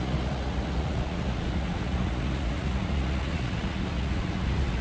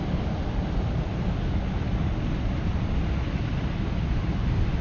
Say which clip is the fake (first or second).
first